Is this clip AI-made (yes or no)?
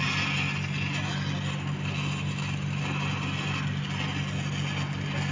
no